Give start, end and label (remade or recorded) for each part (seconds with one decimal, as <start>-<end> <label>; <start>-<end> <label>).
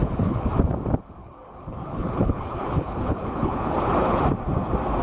0.0-0.5 remade; 0.5-1.2 recorded; 1.2-4.2 remade; 4.2-5.0 recorded